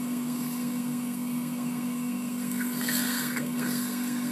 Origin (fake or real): fake